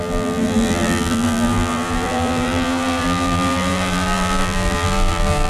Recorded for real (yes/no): no